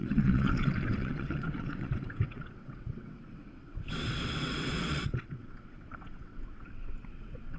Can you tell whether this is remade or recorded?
remade